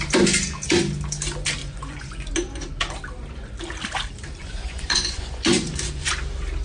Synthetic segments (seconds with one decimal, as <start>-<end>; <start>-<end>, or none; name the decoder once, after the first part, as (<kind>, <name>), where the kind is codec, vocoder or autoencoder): 1.6-2.3 (vocoder, Vocos); 4.4-6.1